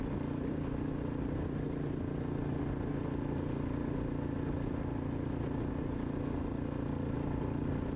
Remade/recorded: recorded